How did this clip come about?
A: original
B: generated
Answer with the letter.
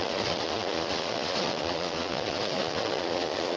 B